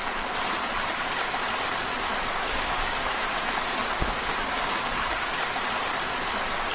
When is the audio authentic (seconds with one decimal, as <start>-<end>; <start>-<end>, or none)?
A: 0.0-2.4; 3.1-3.8; 5.3-6.7